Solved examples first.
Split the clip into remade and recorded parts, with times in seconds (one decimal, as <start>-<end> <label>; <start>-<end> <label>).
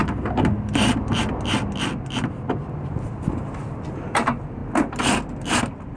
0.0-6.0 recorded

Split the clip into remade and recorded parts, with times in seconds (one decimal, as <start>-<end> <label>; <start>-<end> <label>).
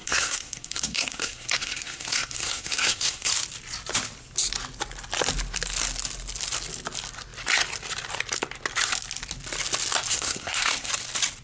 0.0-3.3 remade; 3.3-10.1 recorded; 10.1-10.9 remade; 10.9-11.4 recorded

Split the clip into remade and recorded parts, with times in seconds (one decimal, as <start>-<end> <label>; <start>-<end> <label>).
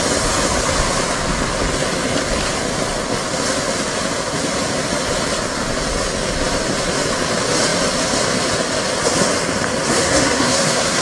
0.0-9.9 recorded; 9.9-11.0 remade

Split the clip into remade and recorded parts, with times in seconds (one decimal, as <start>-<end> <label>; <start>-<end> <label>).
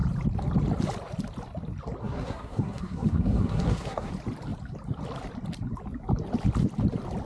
0.0-2.0 recorded; 2.0-4.1 remade; 4.1-7.3 recorded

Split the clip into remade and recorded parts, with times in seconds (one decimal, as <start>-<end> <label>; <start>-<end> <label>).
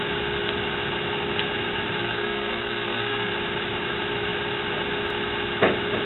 0.0-2.0 recorded; 2.0-3.3 remade; 3.3-6.1 recorded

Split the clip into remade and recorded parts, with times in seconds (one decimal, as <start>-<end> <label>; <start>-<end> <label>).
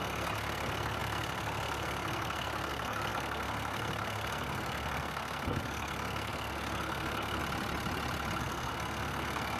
0.0-7.4 remade; 7.4-8.4 recorded; 8.4-9.6 remade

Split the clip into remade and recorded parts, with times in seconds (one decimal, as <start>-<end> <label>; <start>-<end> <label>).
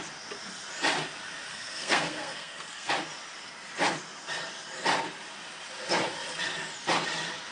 0.0-1.5 recorded; 1.5-2.9 remade; 2.9-7.5 recorded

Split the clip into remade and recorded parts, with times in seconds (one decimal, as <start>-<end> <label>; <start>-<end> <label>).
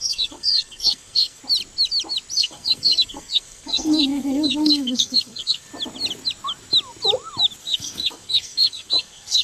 0.0-1.4 remade; 1.4-2.4 recorded; 2.4-5.7 remade; 5.7-7.6 recorded; 7.6-9.4 remade